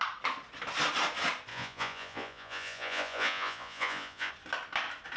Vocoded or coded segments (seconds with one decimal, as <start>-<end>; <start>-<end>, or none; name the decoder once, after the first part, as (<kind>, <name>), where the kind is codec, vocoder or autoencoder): 1.5-4.3 (vocoder, Vocos)